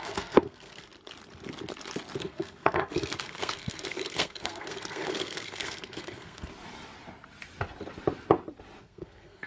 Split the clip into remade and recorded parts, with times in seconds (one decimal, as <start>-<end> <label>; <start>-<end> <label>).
0.0-0.9 remade; 0.9-2.2 recorded; 2.2-6.5 remade; 6.5-8.8 recorded; 8.8-9.5 remade

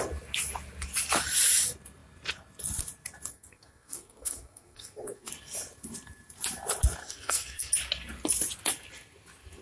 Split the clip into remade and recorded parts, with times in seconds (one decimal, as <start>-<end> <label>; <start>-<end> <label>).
0.0-3.3 recorded; 3.3-5.3 remade; 5.3-7.0 recorded; 7.0-7.7 remade; 7.7-9.6 recorded

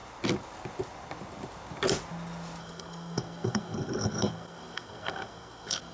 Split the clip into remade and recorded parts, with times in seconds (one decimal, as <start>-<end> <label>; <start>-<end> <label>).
0.0-2.6 recorded; 2.6-5.9 remade

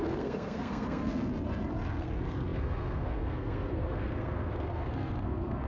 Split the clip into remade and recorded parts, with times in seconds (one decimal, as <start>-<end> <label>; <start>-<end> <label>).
0.0-1.3 remade; 1.3-1.9 recorded; 1.9-5.7 remade

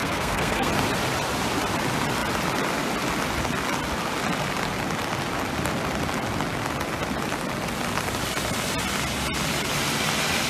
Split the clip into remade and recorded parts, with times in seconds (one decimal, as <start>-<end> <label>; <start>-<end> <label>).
0.0-0.7 remade; 0.7-10.5 recorded